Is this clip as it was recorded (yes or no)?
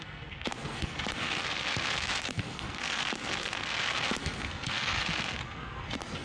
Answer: no